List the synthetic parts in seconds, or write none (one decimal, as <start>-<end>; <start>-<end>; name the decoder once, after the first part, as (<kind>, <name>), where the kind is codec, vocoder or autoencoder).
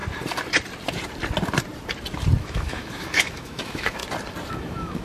2.4-4.0 (autoencoder, DAC-VAE); 4.5-5.0